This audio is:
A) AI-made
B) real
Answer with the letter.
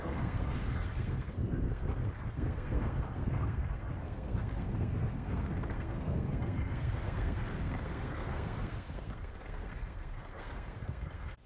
A